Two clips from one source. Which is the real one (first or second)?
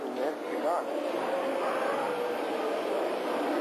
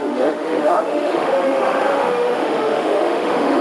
first